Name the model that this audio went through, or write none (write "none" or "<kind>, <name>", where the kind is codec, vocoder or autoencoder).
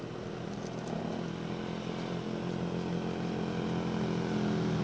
none